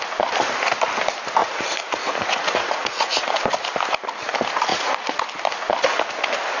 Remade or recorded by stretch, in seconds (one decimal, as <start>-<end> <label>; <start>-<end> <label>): 0.0-1.4 recorded; 1.4-3.4 remade; 3.4-4.7 recorded; 4.7-5.2 remade; 5.2-6.6 recorded